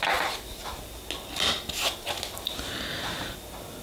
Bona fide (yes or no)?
yes